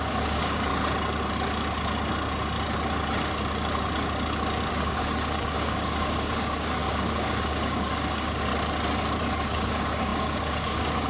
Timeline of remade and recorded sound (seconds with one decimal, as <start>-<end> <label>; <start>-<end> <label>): 0.0-0.7 remade; 0.7-4.7 recorded; 4.7-8.5 remade; 8.5-9.2 recorded; 9.2-11.1 remade